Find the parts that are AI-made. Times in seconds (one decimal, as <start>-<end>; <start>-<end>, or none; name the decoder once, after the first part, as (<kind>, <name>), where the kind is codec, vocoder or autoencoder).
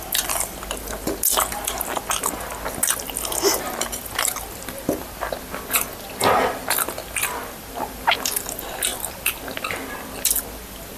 none